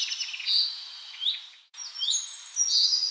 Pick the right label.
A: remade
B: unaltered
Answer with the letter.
B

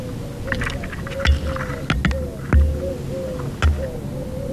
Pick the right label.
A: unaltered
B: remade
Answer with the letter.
A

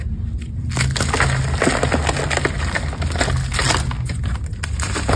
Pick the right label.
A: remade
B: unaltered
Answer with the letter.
B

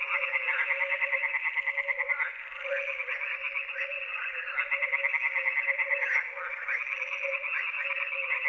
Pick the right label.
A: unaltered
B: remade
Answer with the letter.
B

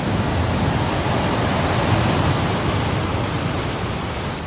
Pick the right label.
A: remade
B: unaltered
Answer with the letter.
B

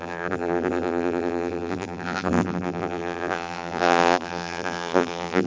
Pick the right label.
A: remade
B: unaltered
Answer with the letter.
A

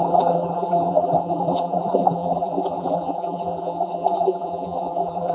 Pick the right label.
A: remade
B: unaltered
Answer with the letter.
A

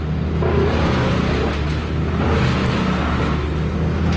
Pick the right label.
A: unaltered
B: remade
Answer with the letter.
A